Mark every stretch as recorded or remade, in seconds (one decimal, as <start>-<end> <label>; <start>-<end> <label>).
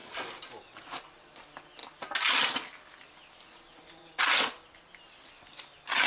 0.0-6.1 recorded